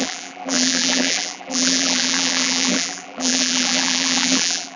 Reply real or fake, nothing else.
fake